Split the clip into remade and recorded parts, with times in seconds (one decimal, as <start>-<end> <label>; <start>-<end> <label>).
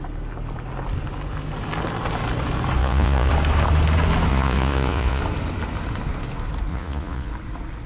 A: 0.0-2.8 recorded; 2.8-3.3 remade; 3.3-4.3 recorded; 4.3-5.2 remade; 5.2-6.7 recorded; 6.7-7.3 remade; 7.3-7.9 recorded